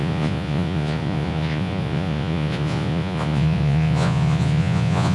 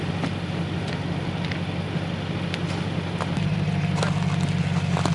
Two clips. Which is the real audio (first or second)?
second